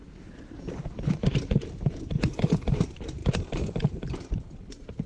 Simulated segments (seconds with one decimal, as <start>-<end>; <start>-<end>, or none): 0.0-5.1